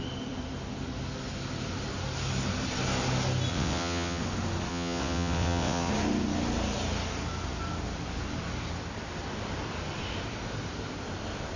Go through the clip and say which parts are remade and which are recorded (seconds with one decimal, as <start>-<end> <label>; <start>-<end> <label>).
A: 0.0-3.5 recorded; 3.5-4.2 remade; 4.2-4.7 recorded; 4.7-5.9 remade; 5.9-11.6 recorded

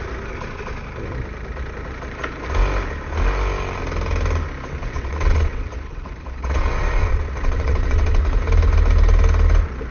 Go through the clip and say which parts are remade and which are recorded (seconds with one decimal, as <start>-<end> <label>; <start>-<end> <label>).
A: 0.0-4.8 recorded; 4.8-8.4 remade; 8.4-9.9 recorded

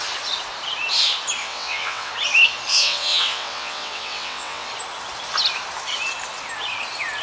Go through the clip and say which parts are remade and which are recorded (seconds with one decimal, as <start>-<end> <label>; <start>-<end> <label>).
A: 0.0-1.4 recorded; 1.4-2.1 remade; 2.1-2.7 recorded; 2.7-4.7 remade; 4.7-7.2 recorded

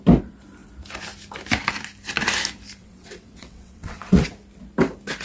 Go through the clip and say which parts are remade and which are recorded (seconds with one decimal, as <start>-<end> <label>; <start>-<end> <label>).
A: 0.0-2.8 recorded; 2.8-4.3 remade; 4.3-5.2 recorded

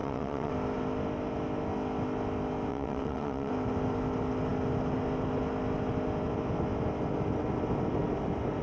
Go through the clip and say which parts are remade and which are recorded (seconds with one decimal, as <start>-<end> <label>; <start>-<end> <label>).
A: 0.0-0.5 remade; 0.5-2.7 recorded; 2.7-3.5 remade; 3.5-8.6 recorded